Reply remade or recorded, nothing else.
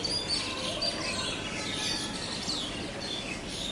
recorded